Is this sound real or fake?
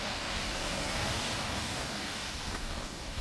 fake